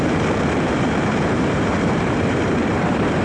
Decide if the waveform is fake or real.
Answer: fake